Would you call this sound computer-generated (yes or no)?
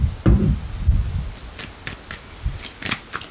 no